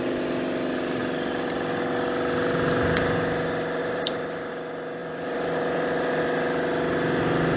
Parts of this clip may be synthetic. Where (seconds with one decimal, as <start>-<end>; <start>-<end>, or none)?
3.8-4.5; 5.0-6.2

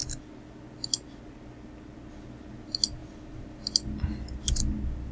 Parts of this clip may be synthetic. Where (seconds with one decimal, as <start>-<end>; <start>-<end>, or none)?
3.0-3.6

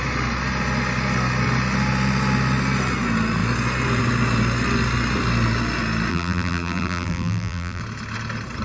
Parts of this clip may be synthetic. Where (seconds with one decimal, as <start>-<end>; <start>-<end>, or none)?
6.1-7.8

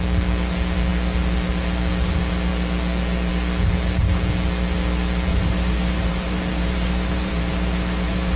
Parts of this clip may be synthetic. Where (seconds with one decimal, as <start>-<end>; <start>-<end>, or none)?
5.3-8.4

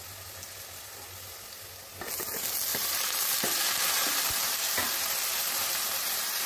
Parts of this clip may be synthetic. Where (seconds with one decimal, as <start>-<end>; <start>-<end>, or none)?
2.7-6.5

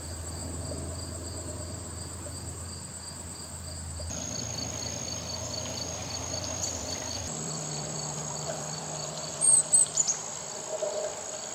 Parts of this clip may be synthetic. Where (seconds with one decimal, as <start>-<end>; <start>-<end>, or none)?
6.0-9.6

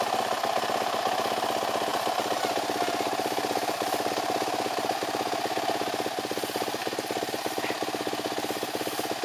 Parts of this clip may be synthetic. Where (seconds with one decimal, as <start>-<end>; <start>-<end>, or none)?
1.9-4.1